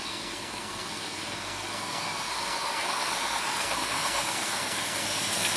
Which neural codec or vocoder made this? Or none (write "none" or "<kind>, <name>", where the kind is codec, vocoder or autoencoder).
codec, SNAC